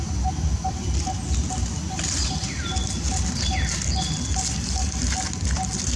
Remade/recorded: recorded